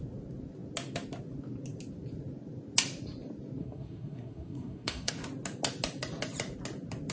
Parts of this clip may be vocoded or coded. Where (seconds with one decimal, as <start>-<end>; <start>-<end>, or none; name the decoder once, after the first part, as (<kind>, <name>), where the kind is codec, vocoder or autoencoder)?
3.6-5.1 (codec, SNAC)